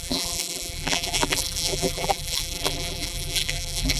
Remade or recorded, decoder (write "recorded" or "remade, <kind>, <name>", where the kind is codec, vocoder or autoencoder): remade, vocoder, BigVGAN v2